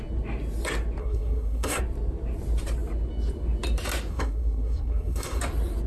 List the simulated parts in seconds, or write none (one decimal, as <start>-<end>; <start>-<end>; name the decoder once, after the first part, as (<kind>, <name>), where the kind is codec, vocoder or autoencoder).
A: 1.0-1.8 (codec, SNAC); 4.1-5.4